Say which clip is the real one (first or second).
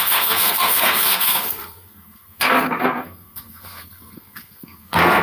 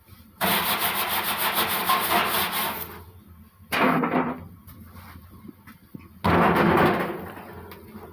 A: second